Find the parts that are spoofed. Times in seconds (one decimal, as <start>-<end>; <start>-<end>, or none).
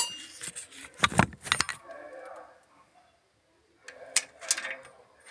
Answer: none